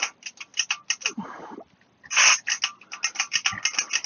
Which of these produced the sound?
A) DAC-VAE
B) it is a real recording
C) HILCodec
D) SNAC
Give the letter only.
B